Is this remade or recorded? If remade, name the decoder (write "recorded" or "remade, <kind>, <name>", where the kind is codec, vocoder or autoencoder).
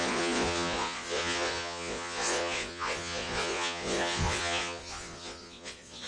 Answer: remade, vocoder, Vocos